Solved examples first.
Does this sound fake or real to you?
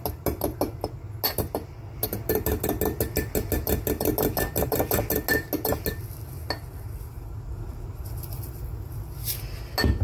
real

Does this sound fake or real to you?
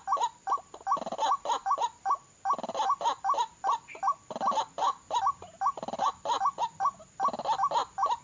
real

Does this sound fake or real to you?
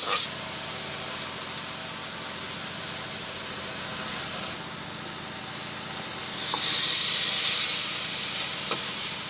real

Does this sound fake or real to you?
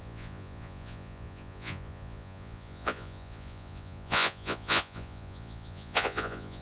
fake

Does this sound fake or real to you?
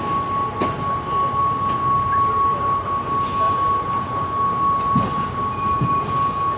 real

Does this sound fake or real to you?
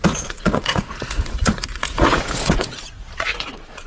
fake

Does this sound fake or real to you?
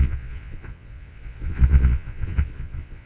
fake